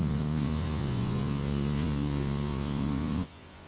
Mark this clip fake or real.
fake